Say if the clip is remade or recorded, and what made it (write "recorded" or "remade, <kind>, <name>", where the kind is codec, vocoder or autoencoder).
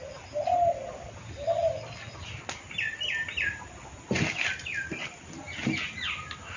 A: recorded